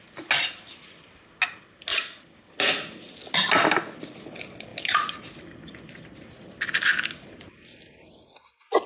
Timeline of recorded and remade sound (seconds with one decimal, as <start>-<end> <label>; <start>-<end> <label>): 0.0-8.9 recorded